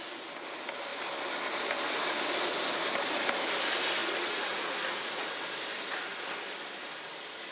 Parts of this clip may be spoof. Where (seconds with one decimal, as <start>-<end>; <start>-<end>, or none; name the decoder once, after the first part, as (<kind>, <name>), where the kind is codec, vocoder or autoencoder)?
4.0-5.3 (vocoder, Vocos)